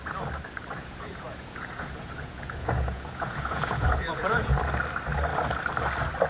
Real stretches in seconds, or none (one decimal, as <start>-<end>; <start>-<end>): 0.0-0.8; 4.6-6.3